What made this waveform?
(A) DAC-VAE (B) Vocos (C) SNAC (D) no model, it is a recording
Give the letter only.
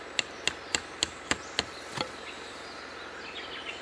D